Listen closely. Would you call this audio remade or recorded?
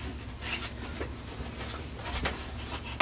recorded